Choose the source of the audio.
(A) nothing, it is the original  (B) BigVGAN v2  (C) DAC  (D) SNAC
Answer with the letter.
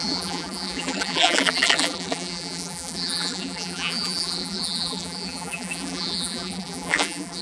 B